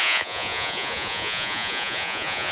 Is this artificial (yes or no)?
yes